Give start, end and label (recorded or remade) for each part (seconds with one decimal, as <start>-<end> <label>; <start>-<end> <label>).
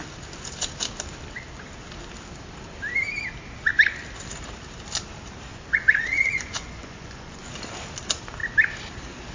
0.0-5.5 recorded; 5.5-7.5 remade; 7.5-9.3 recorded